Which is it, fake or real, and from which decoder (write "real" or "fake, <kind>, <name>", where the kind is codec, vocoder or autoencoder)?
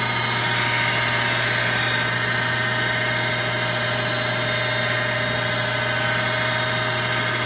real